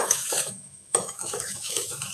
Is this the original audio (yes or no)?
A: no